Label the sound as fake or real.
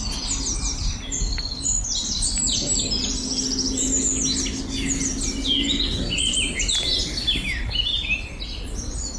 real